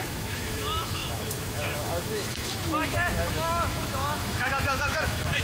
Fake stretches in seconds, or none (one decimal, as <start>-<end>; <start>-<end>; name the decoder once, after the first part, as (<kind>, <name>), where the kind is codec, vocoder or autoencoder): 0.0-5.4 (autoencoder, DAC-VAE)